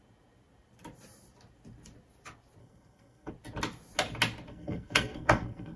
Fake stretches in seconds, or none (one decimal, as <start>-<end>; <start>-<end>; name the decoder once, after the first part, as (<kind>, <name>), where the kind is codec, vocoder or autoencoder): 2.6-3.3 (codec, SNAC); 4.5-5.8